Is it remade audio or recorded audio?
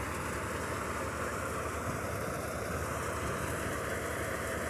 recorded